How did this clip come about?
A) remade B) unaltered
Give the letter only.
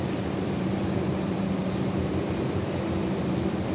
A